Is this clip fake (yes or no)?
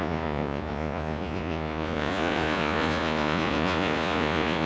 yes